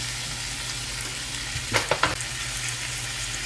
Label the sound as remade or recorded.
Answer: recorded